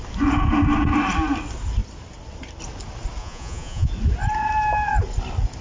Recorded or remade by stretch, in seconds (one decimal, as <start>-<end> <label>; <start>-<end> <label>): 0.0-3.2 recorded; 3.2-3.9 remade; 3.9-5.6 recorded